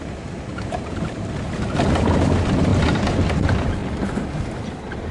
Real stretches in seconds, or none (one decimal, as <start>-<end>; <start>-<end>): 0.0-0.5; 1.3-5.1